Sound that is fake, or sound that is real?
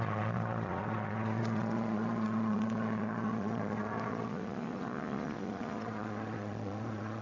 fake